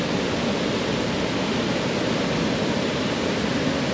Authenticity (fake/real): real